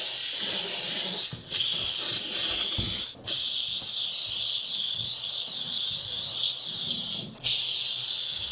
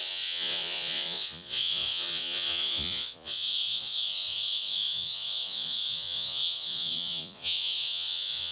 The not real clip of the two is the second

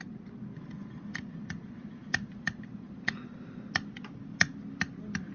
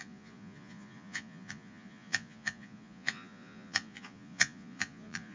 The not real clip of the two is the second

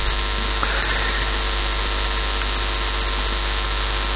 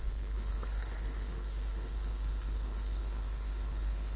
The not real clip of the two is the second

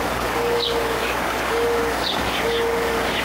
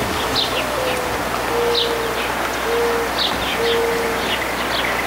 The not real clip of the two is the first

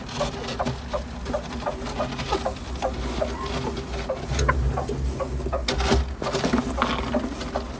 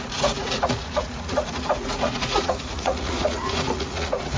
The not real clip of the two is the second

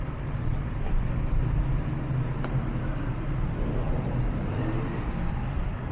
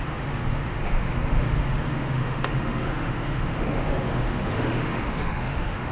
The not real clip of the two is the second